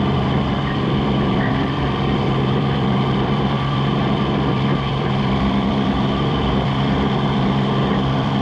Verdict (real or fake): fake